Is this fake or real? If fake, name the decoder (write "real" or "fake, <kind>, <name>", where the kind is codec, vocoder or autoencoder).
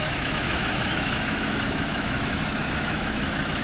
fake, autoencoder, DAC-VAE